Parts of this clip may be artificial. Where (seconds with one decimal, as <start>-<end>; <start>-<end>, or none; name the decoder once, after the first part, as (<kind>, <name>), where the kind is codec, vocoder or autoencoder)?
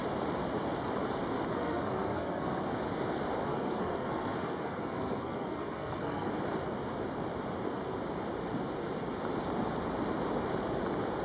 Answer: 1.5-2.6 (codec, SNAC); 3.5-6.3